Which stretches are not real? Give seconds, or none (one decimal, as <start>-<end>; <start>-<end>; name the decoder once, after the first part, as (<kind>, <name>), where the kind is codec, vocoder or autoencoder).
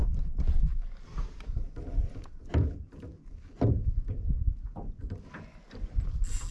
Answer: none